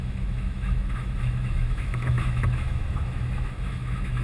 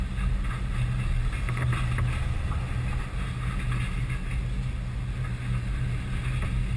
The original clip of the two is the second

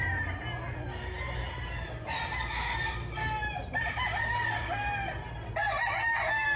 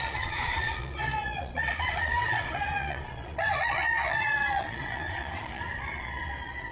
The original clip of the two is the first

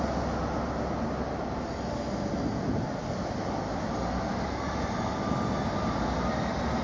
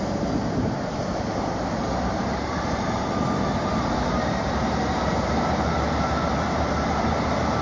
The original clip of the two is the first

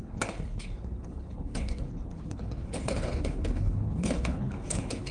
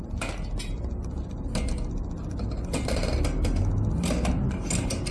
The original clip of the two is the second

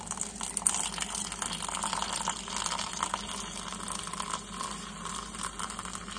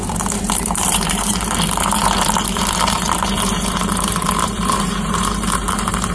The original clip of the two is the first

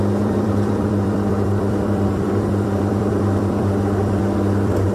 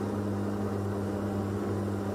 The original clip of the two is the second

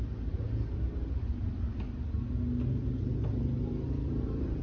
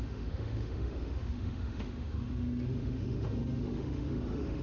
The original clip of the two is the first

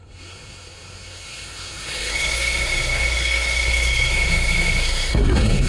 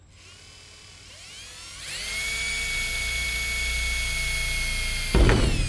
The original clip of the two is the second